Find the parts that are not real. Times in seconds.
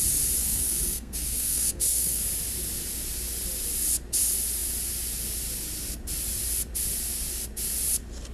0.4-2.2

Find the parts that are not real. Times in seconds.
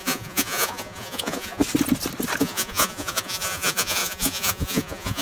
0.0-1.6; 2.4-5.2